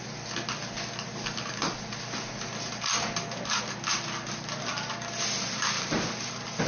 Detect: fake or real real